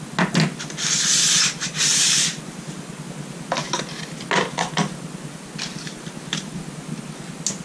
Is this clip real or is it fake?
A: real